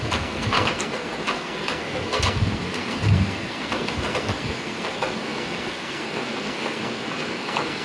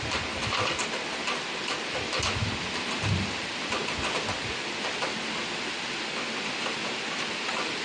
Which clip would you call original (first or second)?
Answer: second